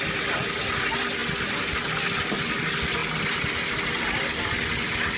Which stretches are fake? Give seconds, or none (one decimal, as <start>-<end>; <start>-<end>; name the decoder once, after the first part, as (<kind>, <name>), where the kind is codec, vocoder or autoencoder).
none